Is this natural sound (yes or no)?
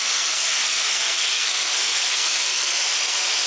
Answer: no